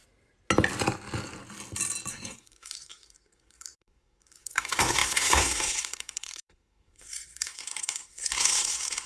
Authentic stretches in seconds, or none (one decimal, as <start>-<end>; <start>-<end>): 0.0-2.1